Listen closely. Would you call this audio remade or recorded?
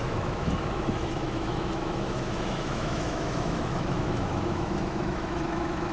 remade